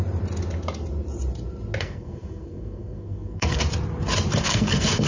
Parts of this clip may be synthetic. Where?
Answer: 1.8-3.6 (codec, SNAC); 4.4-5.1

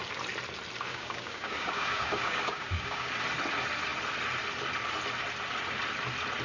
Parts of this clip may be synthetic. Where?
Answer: 0.9-3.1 (codec, DAC)

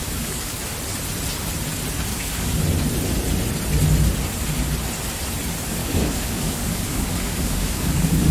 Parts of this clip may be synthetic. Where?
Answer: 0.0-0.6 (codec, DAC); 2.1-2.6; 5.8-8.3

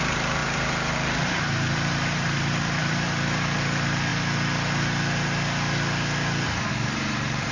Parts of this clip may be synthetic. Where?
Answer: 0.0-4.1 (vocoder, BigVGAN v2); 6.7-7.5

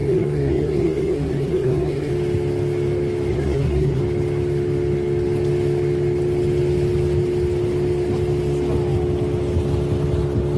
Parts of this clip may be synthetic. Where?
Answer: 0.0-2.1 (codec, SNAC); 3.3-4.0

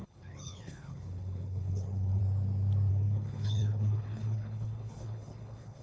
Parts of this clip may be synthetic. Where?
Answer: 0.0-2.2 (codec, HILCodec); 2.9-5.8

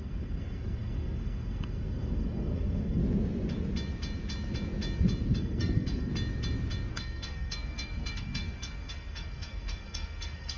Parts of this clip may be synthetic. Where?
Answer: 0.0-3.0 (codec, SNAC); 5.4-6.1; 6.9-10.6

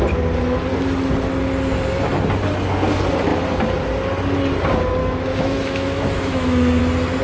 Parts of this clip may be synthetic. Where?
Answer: 5.0-6.8 (autoencoder, DAC-VAE)